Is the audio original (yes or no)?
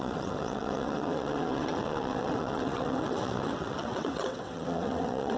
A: no